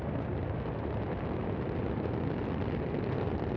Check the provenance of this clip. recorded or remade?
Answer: recorded